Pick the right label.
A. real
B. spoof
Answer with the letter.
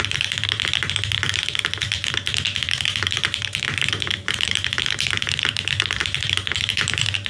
B